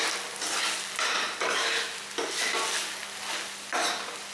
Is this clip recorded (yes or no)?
yes